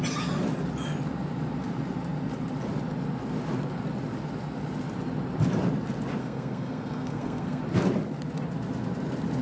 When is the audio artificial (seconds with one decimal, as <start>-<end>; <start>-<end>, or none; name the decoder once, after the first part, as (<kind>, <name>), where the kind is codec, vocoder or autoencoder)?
6.2-7.6 (codec, SNAC)